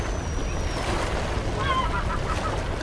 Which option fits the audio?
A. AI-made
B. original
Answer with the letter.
B